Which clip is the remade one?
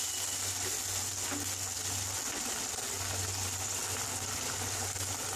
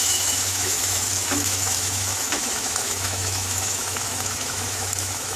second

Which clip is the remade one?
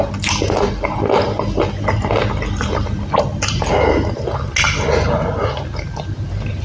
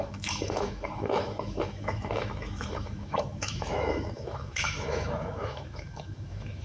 second